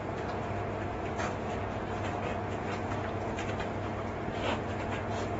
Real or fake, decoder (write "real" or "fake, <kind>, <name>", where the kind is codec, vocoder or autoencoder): real